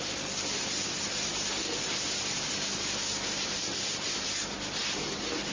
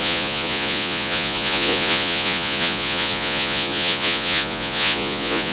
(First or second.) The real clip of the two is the first